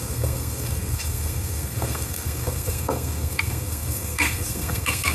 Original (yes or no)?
no